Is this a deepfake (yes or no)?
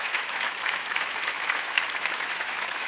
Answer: yes